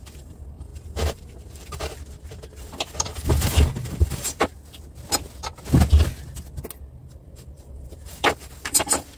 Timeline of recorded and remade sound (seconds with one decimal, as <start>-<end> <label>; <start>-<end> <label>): 0.0-4.5 remade; 4.5-7.0 recorded; 7.0-9.2 remade